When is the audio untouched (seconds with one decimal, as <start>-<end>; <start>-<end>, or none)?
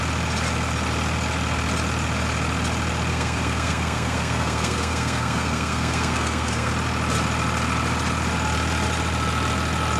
0.0-3.1; 6.7-10.0